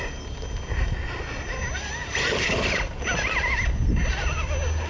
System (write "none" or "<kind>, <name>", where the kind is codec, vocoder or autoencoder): none